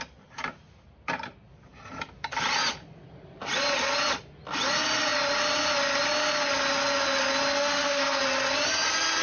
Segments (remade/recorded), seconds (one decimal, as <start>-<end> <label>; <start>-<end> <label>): 0.0-7.6 recorded; 7.6-8.2 remade; 8.2-9.2 recorded